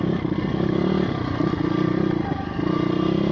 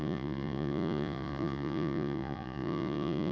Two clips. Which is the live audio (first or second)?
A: first